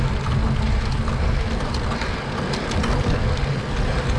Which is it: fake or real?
real